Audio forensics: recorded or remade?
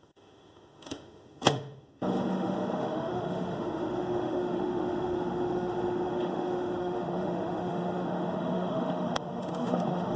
remade